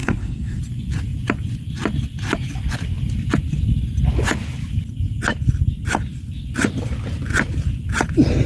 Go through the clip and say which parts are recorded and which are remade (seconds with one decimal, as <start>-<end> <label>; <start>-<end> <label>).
0.0-0.6 remade; 0.6-8.5 recorded